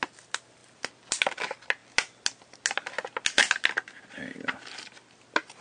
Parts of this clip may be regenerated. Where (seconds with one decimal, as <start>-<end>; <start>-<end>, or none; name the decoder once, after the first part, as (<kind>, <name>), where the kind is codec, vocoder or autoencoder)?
none